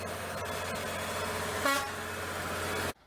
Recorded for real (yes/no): yes